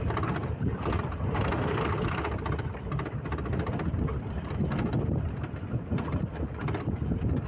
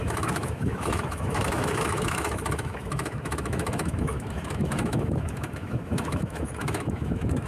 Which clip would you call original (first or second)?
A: first